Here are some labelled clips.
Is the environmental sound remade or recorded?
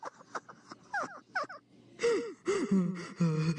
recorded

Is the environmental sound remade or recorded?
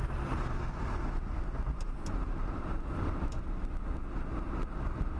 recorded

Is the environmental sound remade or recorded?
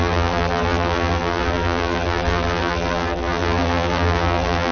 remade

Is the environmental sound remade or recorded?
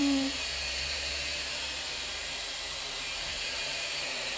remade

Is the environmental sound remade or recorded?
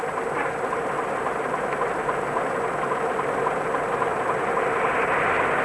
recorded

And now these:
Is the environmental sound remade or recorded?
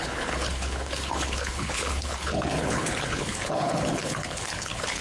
remade